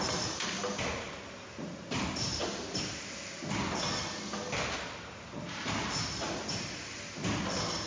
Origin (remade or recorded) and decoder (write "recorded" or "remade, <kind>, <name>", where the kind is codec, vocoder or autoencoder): recorded